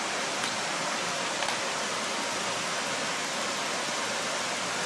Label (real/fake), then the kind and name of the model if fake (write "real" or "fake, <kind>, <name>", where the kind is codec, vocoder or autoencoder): real